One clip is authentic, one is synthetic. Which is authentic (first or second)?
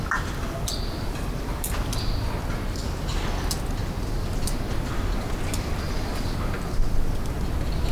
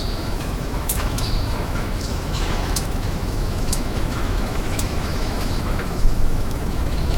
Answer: first